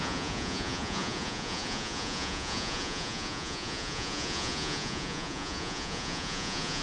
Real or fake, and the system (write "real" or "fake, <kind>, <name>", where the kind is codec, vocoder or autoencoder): fake, vocoder, Vocos